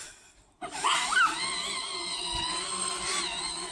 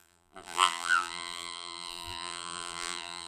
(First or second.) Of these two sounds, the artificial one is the second